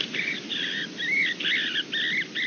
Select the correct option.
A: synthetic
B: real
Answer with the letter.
B